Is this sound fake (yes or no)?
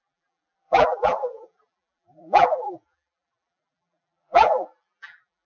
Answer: yes